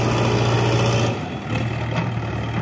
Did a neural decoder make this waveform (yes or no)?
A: no